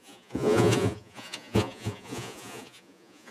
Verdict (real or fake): fake